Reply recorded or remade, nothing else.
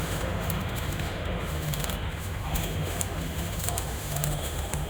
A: remade